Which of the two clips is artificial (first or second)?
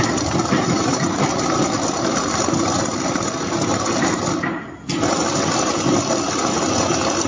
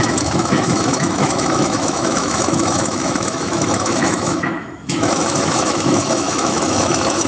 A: second